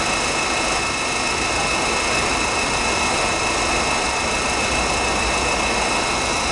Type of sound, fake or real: real